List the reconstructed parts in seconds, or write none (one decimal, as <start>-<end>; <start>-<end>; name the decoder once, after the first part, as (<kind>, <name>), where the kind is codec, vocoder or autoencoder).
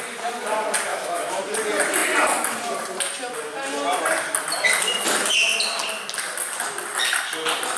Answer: 0.9-1.4 (autoencoder, DAC-VAE)